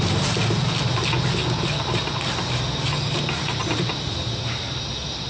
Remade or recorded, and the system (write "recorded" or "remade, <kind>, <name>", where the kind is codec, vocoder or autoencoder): recorded